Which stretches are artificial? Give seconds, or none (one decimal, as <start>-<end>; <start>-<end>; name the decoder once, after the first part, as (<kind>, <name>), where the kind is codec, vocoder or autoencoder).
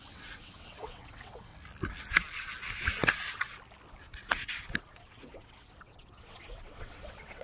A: 0.0-1.5 (vocoder, WaveNeXt); 4.9-7.4